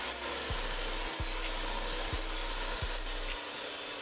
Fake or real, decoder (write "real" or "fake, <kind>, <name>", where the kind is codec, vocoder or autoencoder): real